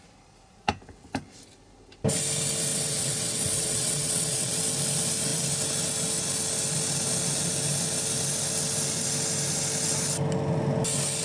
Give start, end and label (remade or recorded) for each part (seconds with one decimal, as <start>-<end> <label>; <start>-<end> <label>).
0.0-2.7 recorded; 2.7-4.5 remade; 4.5-11.2 recorded